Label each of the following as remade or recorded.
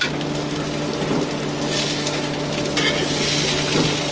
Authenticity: recorded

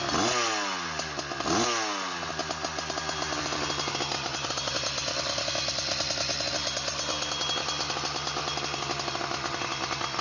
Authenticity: recorded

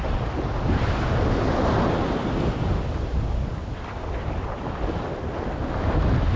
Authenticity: recorded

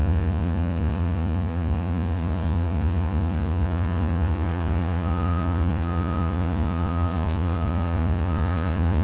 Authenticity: remade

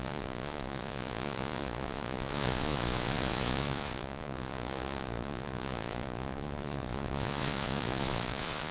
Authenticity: remade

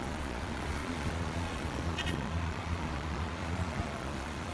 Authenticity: remade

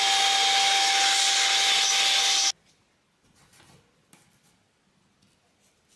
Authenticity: recorded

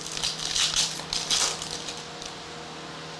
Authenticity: recorded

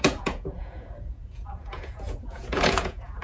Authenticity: remade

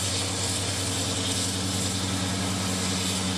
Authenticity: recorded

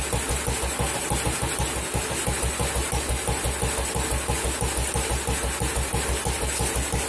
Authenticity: recorded